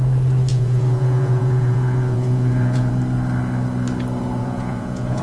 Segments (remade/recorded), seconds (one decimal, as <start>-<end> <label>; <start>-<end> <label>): 0.0-0.5 recorded; 0.5-2.9 remade; 2.9-4.4 recorded; 4.4-5.2 remade